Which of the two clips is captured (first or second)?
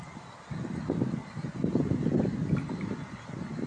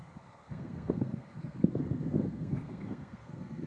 first